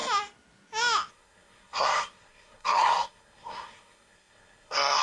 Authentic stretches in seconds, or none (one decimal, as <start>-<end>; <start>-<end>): 0.0-1.1